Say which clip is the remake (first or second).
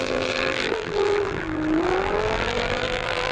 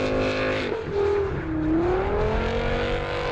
first